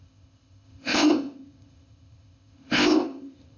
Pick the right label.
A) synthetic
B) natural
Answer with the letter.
A